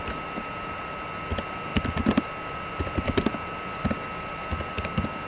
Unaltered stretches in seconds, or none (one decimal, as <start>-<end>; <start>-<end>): 0.0-5.3